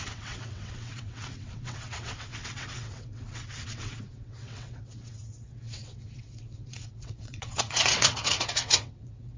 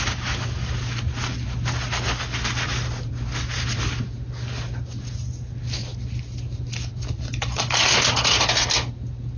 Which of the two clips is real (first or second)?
second